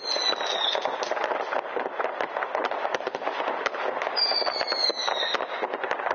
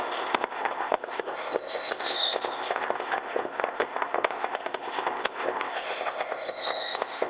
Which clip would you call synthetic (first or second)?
second